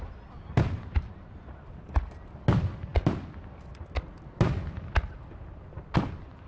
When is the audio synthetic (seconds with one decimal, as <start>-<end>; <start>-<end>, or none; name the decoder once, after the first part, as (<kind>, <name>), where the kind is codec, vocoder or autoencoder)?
none